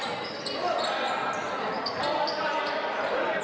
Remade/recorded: recorded